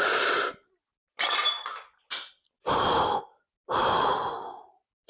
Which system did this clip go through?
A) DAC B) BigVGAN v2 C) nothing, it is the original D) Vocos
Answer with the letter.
C